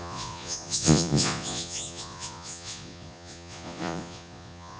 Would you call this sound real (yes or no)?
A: no